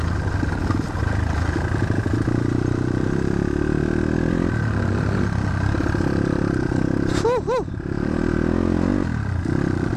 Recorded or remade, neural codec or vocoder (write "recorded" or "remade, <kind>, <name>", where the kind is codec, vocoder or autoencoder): recorded